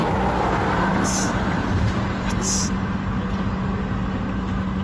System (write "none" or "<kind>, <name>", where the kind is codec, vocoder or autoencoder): none